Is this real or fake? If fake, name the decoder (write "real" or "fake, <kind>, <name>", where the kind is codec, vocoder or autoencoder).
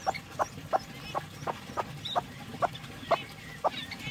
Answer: real